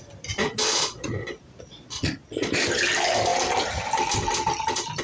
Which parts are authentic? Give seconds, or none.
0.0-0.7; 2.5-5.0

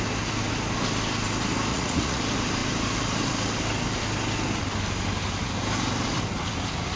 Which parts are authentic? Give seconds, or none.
0.0-1.7; 2.2-7.0

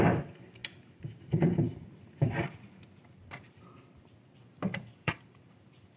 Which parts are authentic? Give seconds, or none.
0.0-1.7; 3.6-4.7

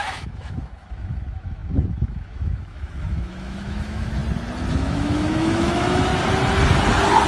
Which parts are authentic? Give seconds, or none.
4.2-4.7; 6.1-7.3

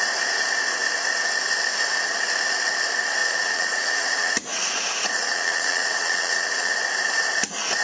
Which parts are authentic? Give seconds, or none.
0.0-3.2; 6.7-7.8